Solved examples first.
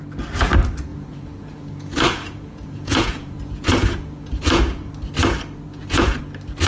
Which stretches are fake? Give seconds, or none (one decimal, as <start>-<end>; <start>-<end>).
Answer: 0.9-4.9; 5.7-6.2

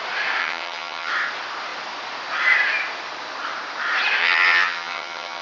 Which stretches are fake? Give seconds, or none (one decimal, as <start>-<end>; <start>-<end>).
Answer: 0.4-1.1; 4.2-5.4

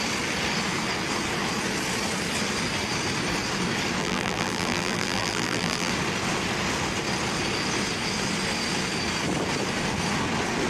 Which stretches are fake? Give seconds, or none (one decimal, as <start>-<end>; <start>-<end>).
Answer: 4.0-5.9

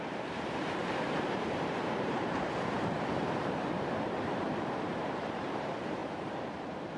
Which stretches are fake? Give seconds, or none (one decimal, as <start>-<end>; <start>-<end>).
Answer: 0.0-7.0